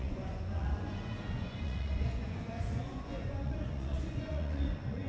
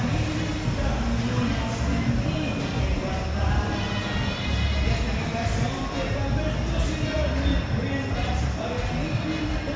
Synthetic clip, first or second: first